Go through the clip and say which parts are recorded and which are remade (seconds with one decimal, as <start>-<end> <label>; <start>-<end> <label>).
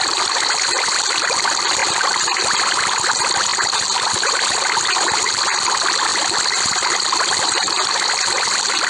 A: 0.0-1.8 recorded; 1.8-2.7 remade; 2.7-8.9 recorded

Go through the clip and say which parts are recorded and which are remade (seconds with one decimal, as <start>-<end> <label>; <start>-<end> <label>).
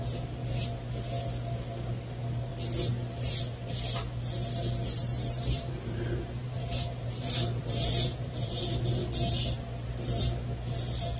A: 0.0-5.1 recorded; 5.1-8.6 remade; 8.6-11.2 recorded